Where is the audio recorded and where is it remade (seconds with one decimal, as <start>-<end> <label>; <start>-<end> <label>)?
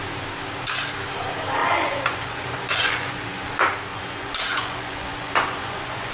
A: 0.0-1.6 recorded; 1.6-3.5 remade; 3.5-3.9 recorded; 3.9-6.1 remade